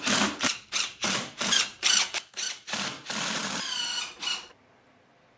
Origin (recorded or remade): remade